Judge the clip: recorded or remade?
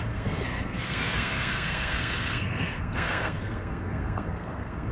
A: remade